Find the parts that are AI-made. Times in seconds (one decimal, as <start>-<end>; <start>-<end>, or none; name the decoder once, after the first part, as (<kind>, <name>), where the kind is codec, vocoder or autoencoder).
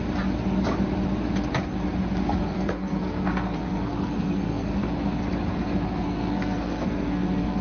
2.4-4.9 (codec, SNAC); 5.5-7.6